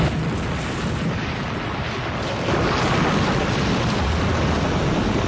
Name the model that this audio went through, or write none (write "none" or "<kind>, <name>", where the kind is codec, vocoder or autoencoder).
none